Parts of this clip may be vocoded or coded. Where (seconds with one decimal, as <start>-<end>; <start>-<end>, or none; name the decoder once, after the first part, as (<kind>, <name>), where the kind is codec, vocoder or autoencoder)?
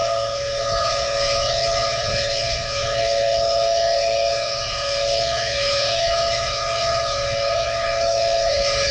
0.0-8.9 (codec, HILCodec)